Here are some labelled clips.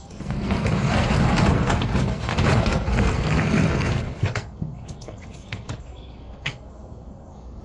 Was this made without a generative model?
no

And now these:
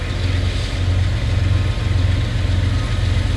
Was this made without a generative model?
yes